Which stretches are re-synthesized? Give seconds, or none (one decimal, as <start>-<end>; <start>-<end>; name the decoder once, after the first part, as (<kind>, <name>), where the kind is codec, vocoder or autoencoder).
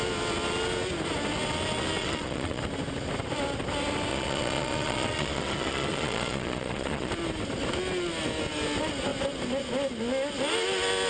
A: 2.0-2.6 (vocoder, Vocos); 4.1-7.1